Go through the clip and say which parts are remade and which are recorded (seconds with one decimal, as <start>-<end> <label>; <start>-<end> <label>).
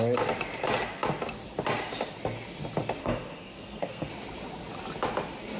0.0-3.0 recorded; 3.0-4.1 remade; 4.1-5.6 recorded